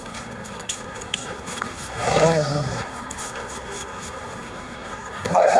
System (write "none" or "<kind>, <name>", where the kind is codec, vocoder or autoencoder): codec, SNAC